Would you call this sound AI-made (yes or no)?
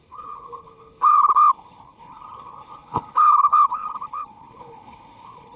yes